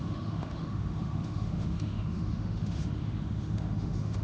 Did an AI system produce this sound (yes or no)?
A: yes